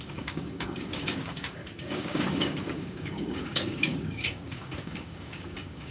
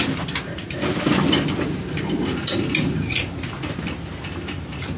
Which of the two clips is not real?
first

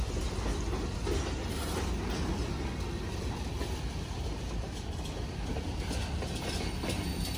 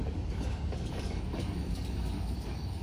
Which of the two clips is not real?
second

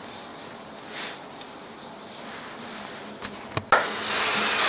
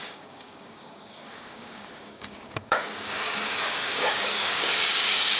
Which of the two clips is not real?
second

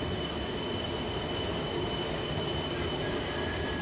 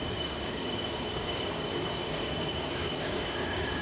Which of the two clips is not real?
second